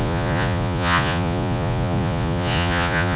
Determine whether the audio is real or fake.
fake